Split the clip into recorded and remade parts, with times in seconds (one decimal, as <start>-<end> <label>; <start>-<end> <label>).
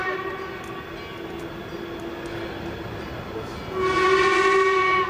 0.0-5.1 recorded